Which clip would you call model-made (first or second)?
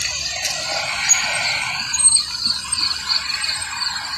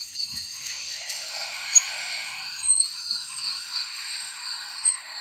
second